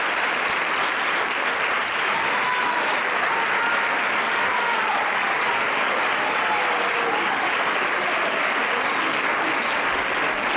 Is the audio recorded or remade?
recorded